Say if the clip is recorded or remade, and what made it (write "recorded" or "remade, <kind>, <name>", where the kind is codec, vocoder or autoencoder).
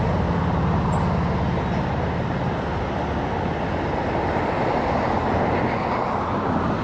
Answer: recorded